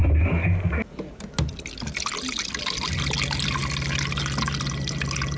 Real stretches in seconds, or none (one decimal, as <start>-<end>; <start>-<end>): 0.0-5.4